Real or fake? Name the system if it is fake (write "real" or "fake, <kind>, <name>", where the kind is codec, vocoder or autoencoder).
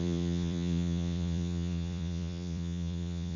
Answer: fake, vocoder, Vocos